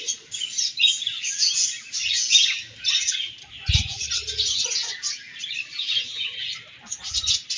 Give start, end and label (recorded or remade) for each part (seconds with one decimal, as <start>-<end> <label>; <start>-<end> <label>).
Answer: 0.0-7.6 recorded